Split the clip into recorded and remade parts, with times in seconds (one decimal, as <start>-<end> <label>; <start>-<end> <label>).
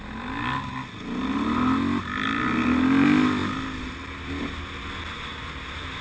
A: 0.0-6.0 recorded